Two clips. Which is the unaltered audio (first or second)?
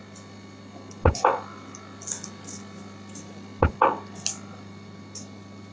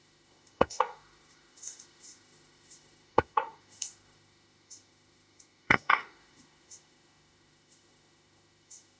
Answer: first